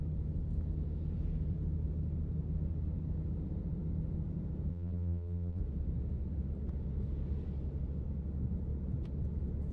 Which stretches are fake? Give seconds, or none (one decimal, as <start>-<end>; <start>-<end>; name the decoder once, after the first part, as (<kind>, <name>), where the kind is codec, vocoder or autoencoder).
4.7-5.6 (vocoder, BigVGAN v2)